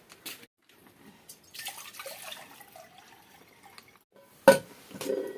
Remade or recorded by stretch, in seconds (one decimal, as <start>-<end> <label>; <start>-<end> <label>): 0.0-0.6 recorded; 0.6-2.2 remade; 2.2-5.4 recorded